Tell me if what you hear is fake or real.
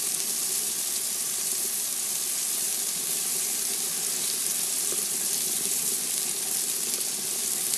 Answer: fake